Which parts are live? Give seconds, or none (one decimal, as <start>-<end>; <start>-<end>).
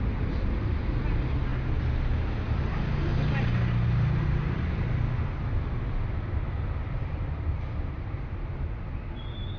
0.0-9.6